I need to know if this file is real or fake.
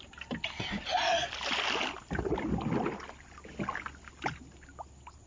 real